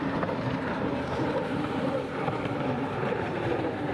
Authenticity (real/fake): fake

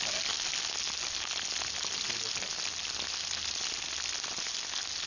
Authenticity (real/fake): real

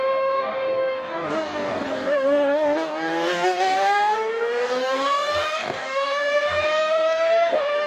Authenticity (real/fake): fake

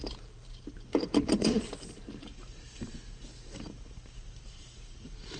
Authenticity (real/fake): fake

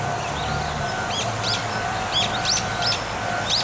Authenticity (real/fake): real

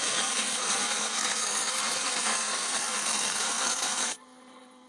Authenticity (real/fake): fake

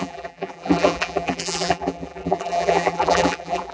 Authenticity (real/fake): fake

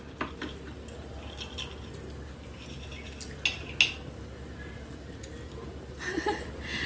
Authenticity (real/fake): real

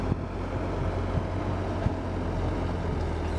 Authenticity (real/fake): real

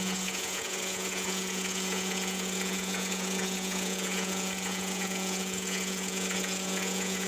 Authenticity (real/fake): fake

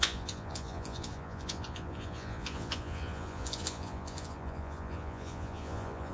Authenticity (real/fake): fake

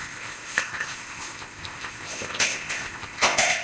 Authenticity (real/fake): fake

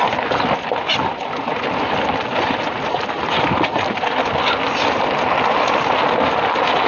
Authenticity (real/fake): real